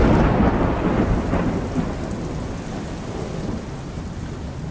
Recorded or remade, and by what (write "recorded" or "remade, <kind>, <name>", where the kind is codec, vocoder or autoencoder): recorded